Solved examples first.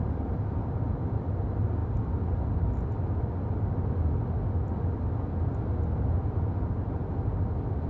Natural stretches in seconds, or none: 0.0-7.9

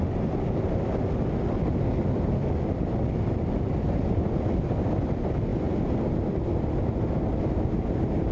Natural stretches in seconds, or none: 0.0-8.3

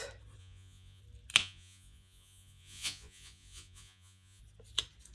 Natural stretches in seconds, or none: 0.0-0.4; 1.0-1.4; 4.4-5.1

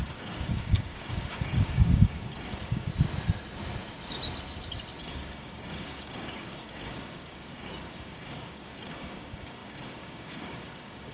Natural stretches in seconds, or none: 2.9-5.0